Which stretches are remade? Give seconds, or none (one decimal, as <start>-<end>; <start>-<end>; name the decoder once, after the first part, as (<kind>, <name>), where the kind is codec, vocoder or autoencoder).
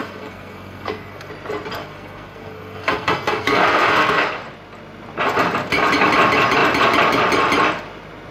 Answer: 0.0-1.3 (codec, SNAC); 1.8-4.2